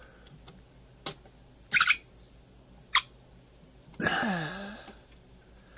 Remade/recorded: recorded